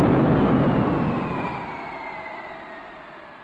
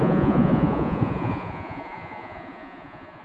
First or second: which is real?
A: first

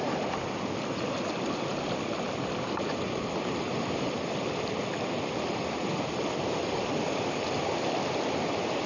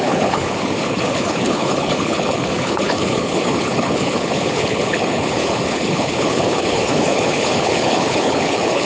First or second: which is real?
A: first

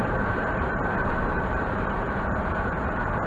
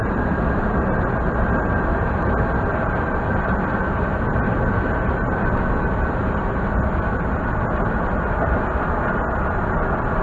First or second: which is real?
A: second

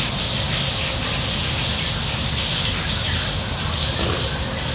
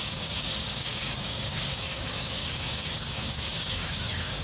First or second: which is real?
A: first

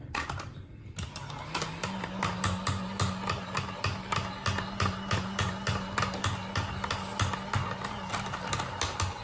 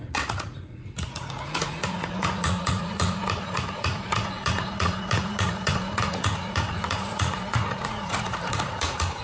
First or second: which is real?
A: first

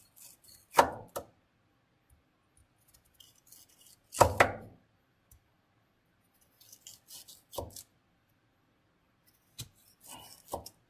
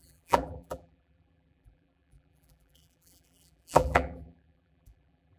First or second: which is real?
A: first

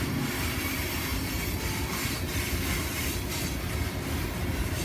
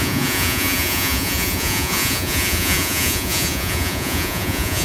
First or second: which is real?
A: first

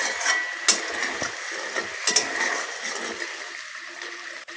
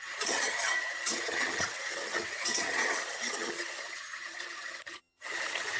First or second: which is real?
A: first